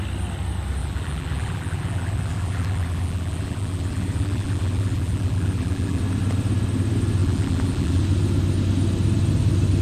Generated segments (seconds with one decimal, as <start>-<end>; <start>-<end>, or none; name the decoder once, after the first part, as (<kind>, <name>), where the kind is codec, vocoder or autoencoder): 0.8-6.0 (vocoder, BigVGAN v2); 7.2-8.0